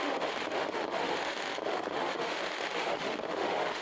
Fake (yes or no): yes